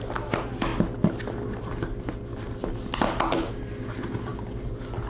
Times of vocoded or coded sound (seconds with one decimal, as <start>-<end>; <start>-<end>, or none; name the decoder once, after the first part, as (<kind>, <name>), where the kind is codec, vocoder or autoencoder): none